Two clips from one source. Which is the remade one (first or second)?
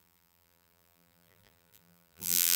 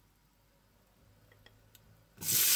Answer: first